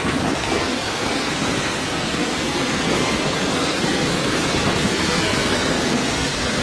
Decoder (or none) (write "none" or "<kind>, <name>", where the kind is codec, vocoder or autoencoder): codec, SNAC